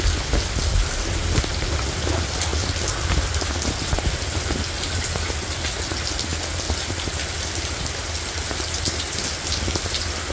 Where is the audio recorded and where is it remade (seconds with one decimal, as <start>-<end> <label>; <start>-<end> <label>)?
0.0-10.3 recorded